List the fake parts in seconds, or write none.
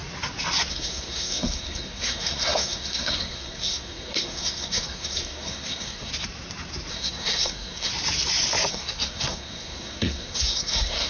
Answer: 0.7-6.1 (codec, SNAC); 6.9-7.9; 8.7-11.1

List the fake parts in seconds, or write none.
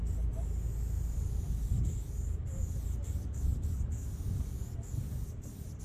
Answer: none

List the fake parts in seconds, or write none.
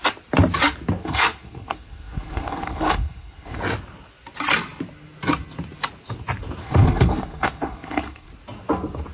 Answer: 1.0-3.6 (codec, SNAC); 6.6-8.3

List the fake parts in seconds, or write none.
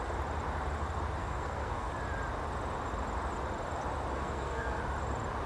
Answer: 1.2-1.9 (codec, SNAC); 4.1-4.8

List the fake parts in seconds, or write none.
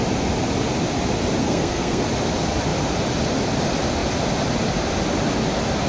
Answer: 1.4-2.0 (codec, SNAC)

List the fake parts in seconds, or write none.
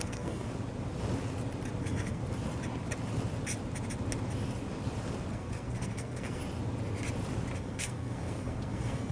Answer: 0.0-0.5 (codec, SNAC); 1.8-2.2; 5.3-6.4; 7.6-9.1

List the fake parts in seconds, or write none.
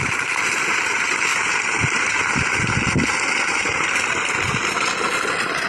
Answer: none